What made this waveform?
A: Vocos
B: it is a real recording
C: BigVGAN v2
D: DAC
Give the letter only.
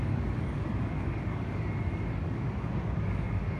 D